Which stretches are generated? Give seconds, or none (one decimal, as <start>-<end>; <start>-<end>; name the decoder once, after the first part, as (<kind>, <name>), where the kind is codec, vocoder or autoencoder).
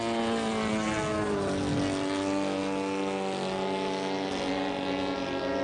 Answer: none